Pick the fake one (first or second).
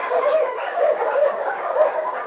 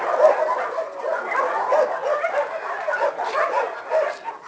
first